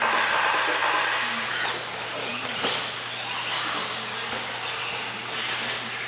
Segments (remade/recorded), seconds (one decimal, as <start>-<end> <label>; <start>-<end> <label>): 0.0-6.1 recorded